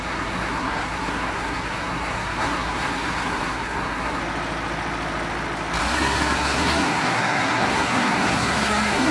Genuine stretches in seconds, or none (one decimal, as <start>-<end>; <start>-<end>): 4.2-5.8